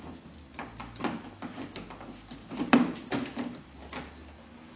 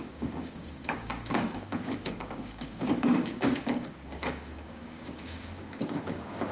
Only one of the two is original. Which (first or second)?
first